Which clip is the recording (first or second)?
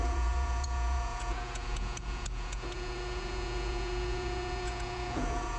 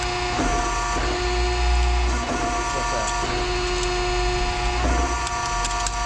second